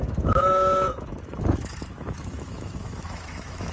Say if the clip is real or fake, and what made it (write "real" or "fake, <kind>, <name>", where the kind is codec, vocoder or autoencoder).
fake, autoencoder, DAC-VAE